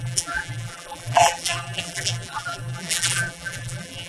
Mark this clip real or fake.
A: fake